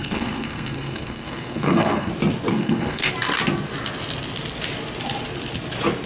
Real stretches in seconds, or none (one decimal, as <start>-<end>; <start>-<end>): 2.1-2.5; 3.1-6.1